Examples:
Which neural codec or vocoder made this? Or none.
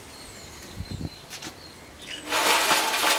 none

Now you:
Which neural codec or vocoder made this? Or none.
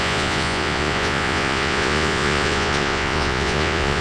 vocoder, Vocos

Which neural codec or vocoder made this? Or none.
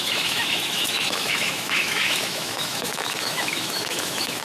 autoencoder, DAC-VAE